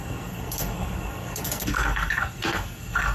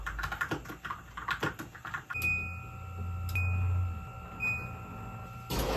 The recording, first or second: second